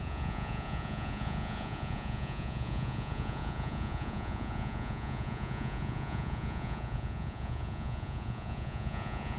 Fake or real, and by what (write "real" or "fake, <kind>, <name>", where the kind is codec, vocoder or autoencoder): fake, vocoder, Vocos